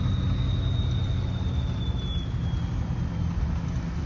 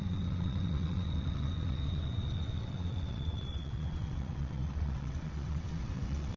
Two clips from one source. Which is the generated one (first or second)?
second